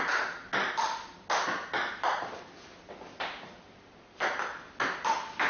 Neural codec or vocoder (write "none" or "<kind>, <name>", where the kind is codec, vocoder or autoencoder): none